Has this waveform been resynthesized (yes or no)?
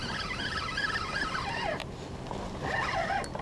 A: no